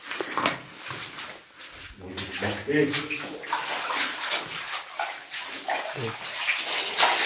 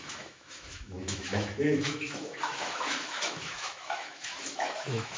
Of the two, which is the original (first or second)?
first